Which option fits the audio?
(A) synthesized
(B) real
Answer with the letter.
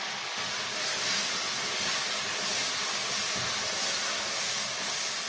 B